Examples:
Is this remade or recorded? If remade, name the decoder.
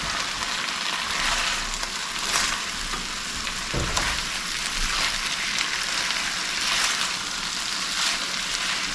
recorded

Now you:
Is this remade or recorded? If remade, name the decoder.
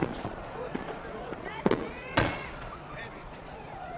remade, vocoder, Vocos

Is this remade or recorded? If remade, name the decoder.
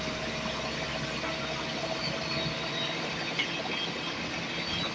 recorded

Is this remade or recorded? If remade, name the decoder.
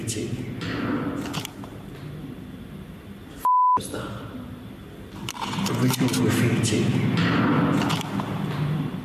recorded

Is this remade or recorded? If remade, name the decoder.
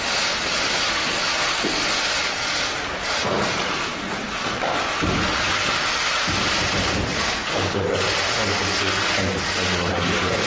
recorded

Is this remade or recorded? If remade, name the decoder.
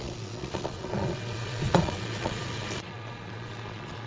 remade, vocoder, Vocos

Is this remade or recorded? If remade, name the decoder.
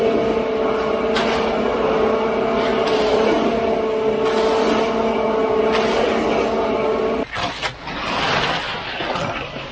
recorded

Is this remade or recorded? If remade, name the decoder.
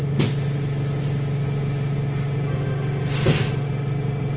recorded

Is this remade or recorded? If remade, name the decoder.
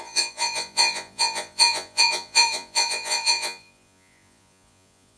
remade, vocoder, Vocos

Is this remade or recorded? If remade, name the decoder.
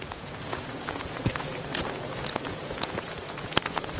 remade, vocoder, Vocos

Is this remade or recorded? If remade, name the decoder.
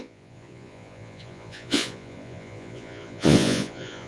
remade, vocoder, Vocos